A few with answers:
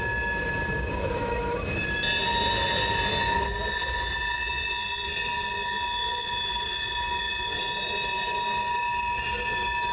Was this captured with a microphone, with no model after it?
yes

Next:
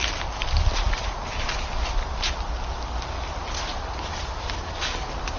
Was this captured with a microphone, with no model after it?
yes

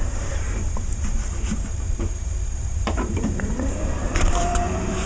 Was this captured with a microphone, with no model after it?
no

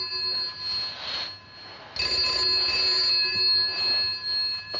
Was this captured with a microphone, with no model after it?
yes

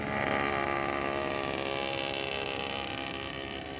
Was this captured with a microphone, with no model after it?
yes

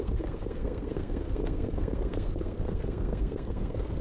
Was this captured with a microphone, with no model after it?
no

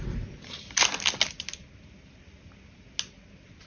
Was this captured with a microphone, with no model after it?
yes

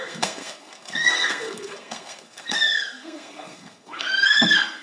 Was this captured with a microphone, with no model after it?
no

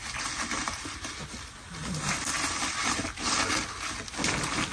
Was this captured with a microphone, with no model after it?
yes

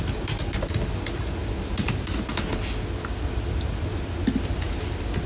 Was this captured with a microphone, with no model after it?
yes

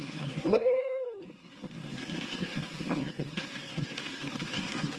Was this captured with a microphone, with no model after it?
no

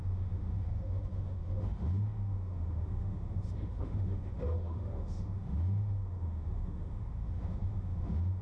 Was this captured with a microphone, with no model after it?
no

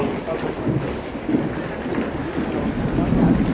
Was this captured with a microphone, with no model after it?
yes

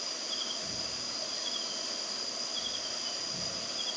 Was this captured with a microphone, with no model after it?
yes